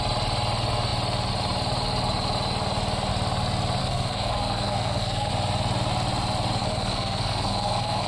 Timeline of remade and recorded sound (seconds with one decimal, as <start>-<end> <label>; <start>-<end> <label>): 0.0-3.8 recorded; 3.8-5.3 remade; 5.3-6.6 recorded; 6.6-8.1 remade